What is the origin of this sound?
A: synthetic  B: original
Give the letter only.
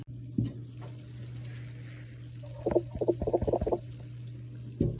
B